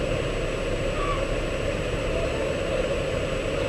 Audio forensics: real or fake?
real